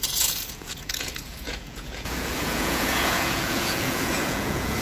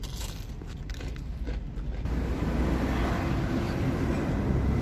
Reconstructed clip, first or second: first